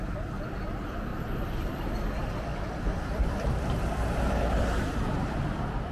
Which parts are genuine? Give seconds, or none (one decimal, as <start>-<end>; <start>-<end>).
0.0-1.1; 1.9-5.9